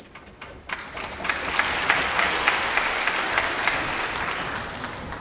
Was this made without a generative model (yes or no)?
yes